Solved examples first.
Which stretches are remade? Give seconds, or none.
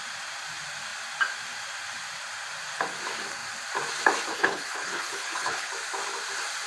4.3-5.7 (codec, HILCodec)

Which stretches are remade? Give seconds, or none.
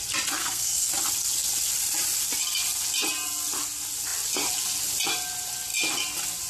0.4-0.9 (codec, SNAC)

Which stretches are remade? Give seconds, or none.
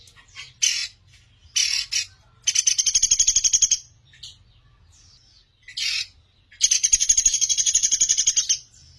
none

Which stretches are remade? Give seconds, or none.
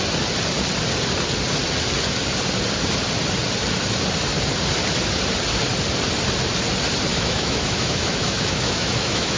7.1-9.4 (autoencoder, DAC-VAE)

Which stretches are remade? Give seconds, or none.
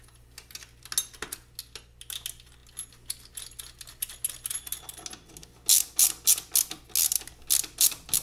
none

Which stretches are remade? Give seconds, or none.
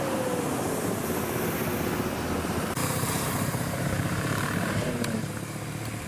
2.8-5.2 (vocoder, BigVGAN v2)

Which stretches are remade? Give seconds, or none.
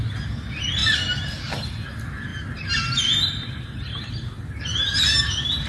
3.9-4.9 (vocoder, BigVGAN v2)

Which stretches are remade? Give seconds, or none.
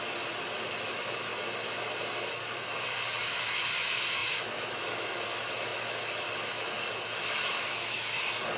0.0-1.3 (autoencoder, DAC-VAE); 2.3-8.6